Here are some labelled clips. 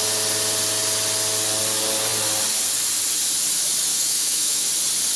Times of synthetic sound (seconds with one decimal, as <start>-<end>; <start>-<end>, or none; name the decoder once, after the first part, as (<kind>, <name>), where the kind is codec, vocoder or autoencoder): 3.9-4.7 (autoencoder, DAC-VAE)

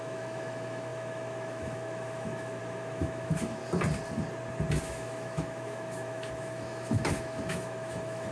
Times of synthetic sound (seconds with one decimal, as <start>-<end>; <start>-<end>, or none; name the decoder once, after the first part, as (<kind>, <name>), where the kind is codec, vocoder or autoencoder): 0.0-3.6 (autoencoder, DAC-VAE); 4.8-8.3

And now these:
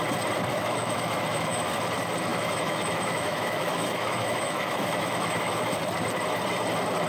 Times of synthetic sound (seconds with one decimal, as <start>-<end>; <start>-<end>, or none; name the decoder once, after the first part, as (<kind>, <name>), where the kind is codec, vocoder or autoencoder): 0.5-1.8 (autoencoder, DAC-VAE); 2.3-5.8

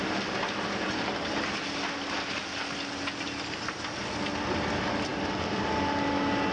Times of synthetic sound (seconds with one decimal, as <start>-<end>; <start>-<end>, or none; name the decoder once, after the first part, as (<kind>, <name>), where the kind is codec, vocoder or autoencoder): none

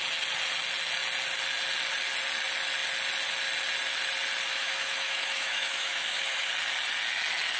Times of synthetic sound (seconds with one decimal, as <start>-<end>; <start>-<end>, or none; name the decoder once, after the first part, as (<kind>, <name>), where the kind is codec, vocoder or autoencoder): 4.5-6.5 (autoencoder, DAC-VAE)

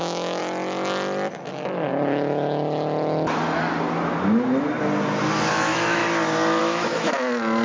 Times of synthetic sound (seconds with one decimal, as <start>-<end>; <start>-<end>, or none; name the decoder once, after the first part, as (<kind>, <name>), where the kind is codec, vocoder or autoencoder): 0.0-0.4 (autoencoder, DAC-VAE); 1.5-1.9; 5.5-6.0; 6.6-7.6